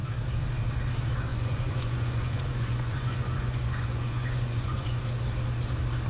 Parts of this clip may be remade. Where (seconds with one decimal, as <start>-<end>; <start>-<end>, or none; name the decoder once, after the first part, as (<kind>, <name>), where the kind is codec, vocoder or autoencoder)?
1.3-5.0 (vocoder, Vocos)